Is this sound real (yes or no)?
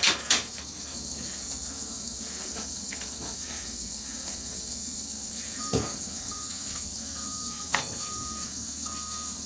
no